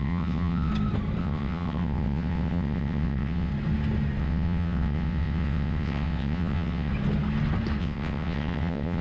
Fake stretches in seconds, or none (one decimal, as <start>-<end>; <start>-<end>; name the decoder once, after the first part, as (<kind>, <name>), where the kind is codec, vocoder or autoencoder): 0.0-0.7 (vocoder, WaveNeXt); 1.2-3.5; 4.2-6.9; 7.8-9.0

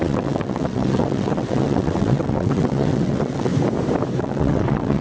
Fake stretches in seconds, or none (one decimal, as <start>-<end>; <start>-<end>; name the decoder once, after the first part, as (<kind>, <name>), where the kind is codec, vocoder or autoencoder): 0.0-3.5 (vocoder, WaveNeXt); 4.2-5.0

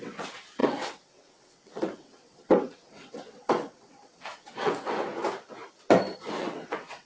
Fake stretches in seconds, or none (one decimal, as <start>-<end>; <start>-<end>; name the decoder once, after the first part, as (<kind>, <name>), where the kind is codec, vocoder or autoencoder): 0.0-5.1 (vocoder, WaveNeXt); 6.3-7.1

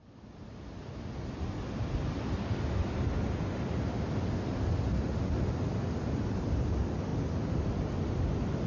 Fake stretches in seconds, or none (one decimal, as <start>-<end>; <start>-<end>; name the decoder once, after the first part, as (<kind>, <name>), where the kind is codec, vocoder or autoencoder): none